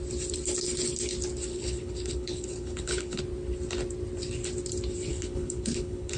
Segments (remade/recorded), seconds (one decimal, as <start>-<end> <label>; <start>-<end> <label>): 0.0-1.5 recorded; 1.5-3.2 remade; 3.2-5.1 recorded; 5.1-6.2 remade